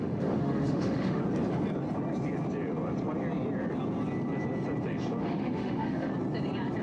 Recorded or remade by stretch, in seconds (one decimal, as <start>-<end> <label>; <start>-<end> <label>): 0.0-1.2 remade; 1.2-5.2 recorded; 5.2-6.1 remade; 6.1-6.8 recorded